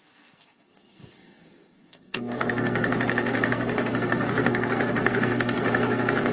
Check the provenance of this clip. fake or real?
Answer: fake